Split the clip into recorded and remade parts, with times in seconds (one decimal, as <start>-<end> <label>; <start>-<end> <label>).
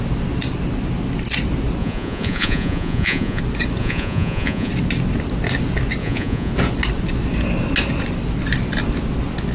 0.0-1.8 recorded; 1.8-3.4 remade; 3.4-3.8 recorded; 3.8-4.7 remade; 4.7-6.0 recorded; 6.0-6.5 remade; 6.5-9.5 recorded